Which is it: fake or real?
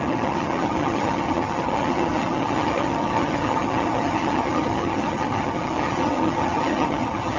fake